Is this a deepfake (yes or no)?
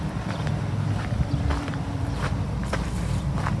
yes